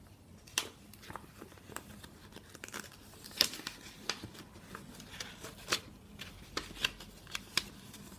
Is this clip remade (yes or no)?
no